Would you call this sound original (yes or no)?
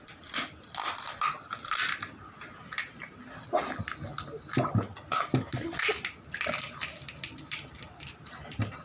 yes